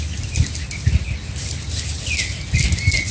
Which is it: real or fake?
real